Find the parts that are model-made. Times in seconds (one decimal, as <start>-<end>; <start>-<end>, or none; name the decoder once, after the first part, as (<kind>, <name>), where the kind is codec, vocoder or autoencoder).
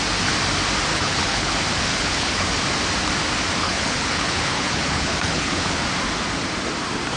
0.9-1.5 (codec, HILCodec); 1.9-2.5; 3.6-5.8